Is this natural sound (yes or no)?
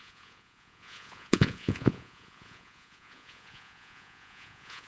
no